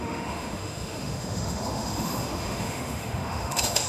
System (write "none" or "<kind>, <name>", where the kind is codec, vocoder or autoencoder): autoencoder, DAC-VAE